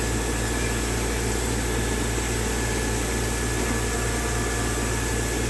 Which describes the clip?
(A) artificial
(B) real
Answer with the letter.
B